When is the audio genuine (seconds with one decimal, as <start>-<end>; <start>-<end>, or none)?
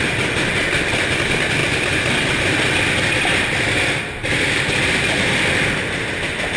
0.0-6.6